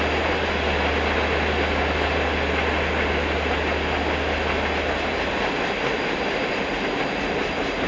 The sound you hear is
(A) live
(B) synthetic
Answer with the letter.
A